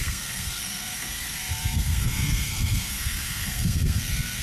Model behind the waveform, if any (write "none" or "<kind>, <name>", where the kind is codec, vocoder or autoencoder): codec, SNAC